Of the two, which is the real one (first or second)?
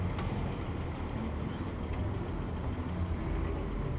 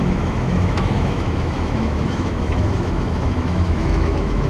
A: first